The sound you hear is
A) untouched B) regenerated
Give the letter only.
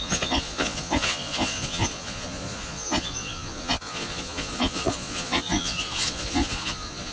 B